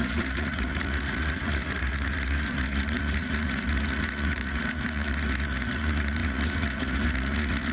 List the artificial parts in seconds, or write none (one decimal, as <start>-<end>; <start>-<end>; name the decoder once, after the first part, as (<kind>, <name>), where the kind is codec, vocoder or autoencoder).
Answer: 0.0-7.7 (vocoder, Vocos)